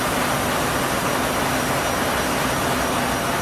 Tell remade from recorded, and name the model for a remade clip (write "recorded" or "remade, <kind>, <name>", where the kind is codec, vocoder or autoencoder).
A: recorded